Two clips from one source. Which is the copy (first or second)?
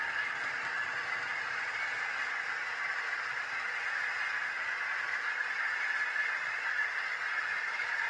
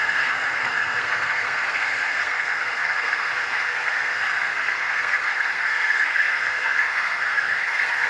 second